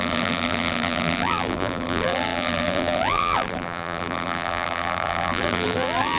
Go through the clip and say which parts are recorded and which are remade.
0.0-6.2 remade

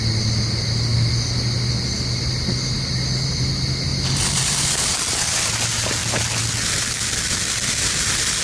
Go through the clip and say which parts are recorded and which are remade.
0.0-3.9 recorded; 3.9-4.9 remade; 4.9-8.4 recorded

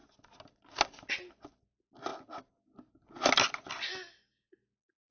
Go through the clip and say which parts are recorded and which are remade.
0.0-5.1 recorded

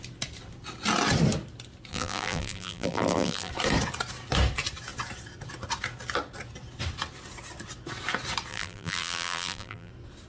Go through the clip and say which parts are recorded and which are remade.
0.0-1.9 recorded; 1.9-3.5 remade; 3.5-8.5 recorded; 8.5-9.9 remade; 9.9-10.3 recorded